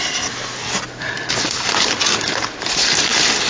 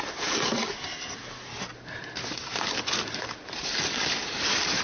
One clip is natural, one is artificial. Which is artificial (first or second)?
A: second